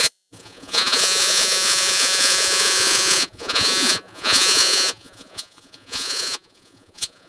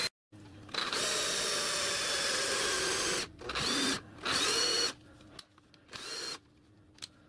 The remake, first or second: first